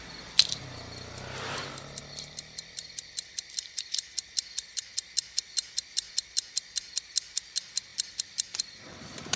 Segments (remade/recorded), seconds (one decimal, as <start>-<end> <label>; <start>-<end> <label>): 0.0-9.4 recorded